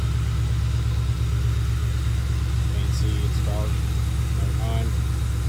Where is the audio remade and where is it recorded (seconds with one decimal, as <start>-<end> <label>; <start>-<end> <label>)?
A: 0.0-5.5 recorded